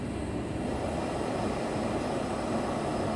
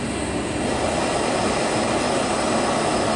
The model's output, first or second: first